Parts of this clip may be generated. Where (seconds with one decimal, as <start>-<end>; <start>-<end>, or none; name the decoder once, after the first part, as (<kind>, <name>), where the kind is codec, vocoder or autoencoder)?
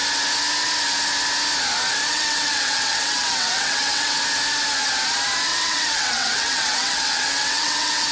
2.0-4.2 (vocoder, WaveNeXt); 5.5-8.1